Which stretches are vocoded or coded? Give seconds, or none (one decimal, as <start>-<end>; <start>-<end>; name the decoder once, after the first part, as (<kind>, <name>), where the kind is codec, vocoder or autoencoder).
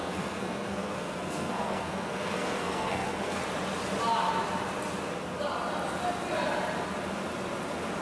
0.0-3.4 (codec, SNAC)